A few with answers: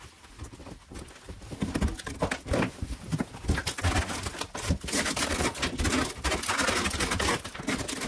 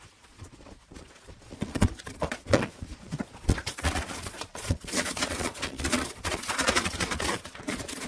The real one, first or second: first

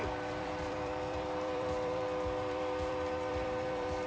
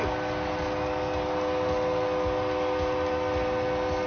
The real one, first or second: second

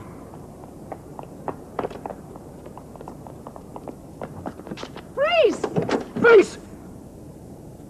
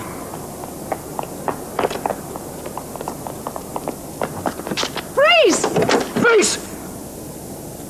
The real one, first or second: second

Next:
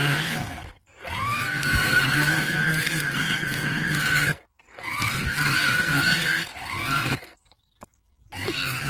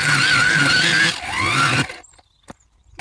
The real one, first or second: second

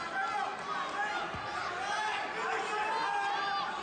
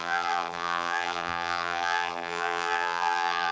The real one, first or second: first